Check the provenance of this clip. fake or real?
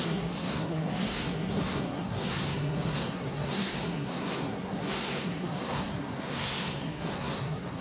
fake